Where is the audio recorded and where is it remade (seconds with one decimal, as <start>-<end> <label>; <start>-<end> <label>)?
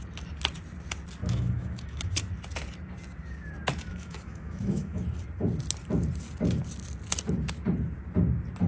0.0-1.2 recorded; 1.2-2.2 remade; 2.2-3.9 recorded; 3.9-5.0 remade; 5.0-8.7 recorded